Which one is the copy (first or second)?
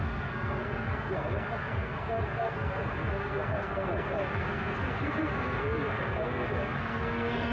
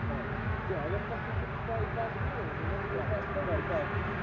first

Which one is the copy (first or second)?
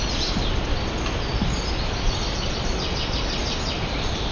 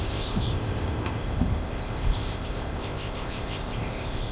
second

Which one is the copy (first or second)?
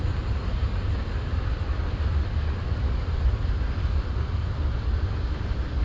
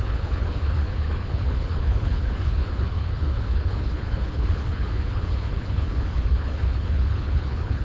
second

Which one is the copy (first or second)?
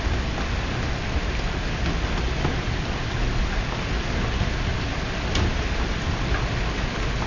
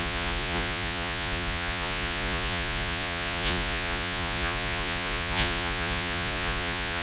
second